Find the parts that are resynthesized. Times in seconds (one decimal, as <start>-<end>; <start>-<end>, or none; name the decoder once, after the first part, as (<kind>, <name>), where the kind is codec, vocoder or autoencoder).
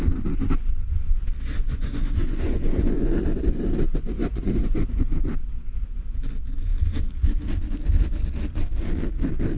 1.6-3.2 (vocoder, Vocos); 4.2-5.1